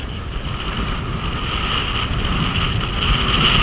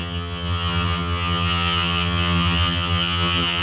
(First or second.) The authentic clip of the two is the first